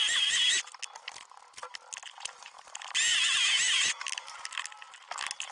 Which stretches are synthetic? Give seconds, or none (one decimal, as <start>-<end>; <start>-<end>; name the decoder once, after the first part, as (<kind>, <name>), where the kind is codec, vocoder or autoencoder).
none